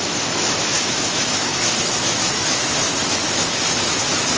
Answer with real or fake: fake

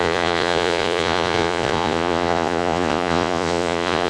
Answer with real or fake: fake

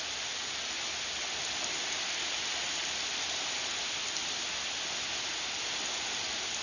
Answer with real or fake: real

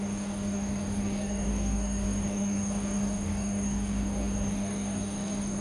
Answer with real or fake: fake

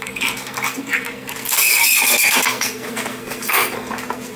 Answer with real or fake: fake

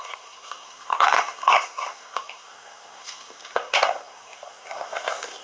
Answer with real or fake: fake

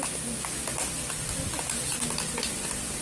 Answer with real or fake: real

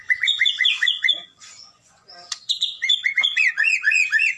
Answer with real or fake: fake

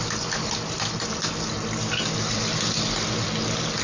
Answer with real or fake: real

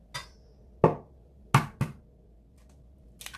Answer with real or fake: real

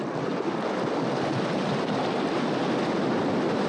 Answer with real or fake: real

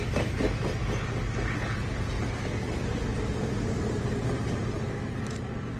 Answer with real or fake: real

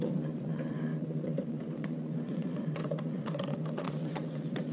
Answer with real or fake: fake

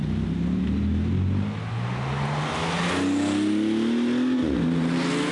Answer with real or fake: real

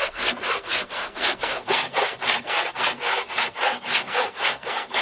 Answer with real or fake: fake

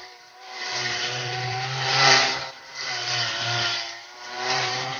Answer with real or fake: fake